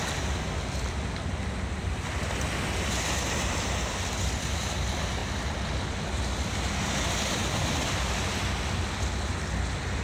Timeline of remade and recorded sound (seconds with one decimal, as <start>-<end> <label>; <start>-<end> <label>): 0.0-5.2 recorded; 5.2-6.7 remade; 6.7-7.4 recorded; 7.4-8.0 remade; 8.0-10.0 recorded